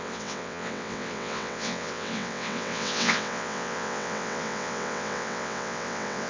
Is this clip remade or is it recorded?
remade